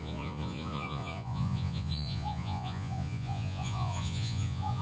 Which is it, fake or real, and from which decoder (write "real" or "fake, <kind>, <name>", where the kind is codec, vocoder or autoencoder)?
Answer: fake, vocoder, Vocos